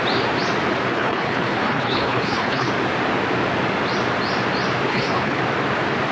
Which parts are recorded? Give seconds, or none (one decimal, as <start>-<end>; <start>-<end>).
0.0-0.9; 2.7-4.9; 5.4-6.1